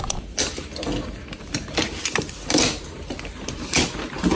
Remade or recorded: remade